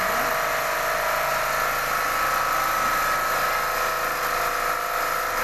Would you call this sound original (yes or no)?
yes